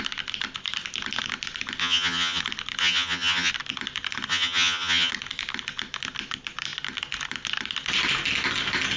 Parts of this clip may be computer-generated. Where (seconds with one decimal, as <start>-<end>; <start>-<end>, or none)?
1.8-2.4; 2.8-3.5; 4.3-5.1